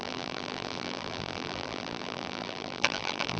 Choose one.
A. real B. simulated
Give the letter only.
B